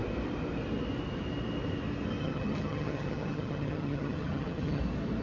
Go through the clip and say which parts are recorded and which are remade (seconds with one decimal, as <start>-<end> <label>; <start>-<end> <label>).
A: 0.0-2.2 recorded; 2.2-4.8 remade; 4.8-5.2 recorded

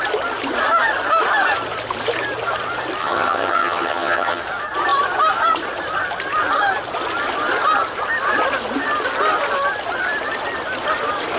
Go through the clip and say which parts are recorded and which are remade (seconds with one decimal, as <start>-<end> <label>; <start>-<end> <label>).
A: 0.0-3.0 recorded; 3.0-4.4 remade; 4.4-11.4 recorded

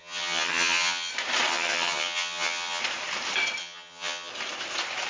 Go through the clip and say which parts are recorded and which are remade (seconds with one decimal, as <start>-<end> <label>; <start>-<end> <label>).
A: 0.0-1.1 remade; 1.1-1.5 recorded; 1.5-2.8 remade; 2.8-3.6 recorded; 3.6-4.3 remade; 4.3-5.1 recorded

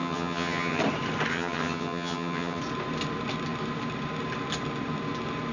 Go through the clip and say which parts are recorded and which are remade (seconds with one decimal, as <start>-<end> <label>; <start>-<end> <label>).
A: 0.0-0.8 remade; 0.8-1.3 recorded; 1.3-2.6 remade; 2.6-5.5 recorded

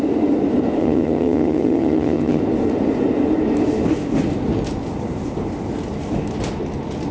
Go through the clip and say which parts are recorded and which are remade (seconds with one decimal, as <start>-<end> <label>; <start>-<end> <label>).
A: 0.0-0.8 recorded; 0.8-2.4 remade; 2.4-7.1 recorded

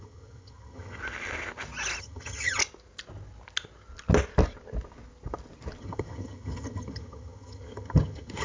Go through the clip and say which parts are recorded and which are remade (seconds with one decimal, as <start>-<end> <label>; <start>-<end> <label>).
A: 0.0-1.0 remade; 1.0-2.0 recorded; 2.0-2.6 remade; 2.6-5.8 recorded; 5.8-8.4 remade

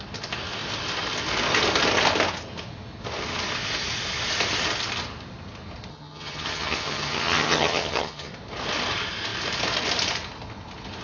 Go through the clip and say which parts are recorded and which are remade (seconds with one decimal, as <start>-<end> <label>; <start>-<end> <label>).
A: 0.0-5.9 recorded; 5.9-8.3 remade; 8.3-11.0 recorded

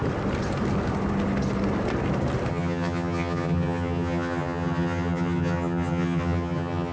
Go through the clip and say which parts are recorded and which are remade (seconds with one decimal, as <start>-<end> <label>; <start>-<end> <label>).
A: 0.0-2.5 recorded; 2.5-6.9 remade